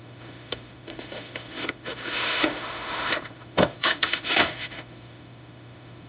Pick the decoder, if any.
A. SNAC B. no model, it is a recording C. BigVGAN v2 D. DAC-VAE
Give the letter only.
D